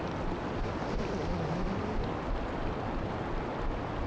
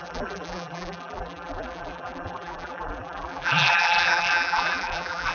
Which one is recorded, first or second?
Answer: first